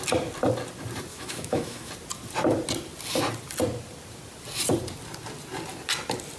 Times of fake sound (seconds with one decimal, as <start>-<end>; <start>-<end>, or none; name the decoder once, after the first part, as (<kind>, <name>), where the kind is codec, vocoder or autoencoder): 1.1-1.9 (autoencoder, DAC-VAE)